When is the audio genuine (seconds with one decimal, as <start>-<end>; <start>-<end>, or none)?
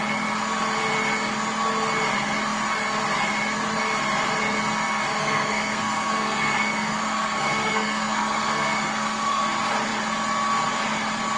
0.0-5.2; 9.4-11.4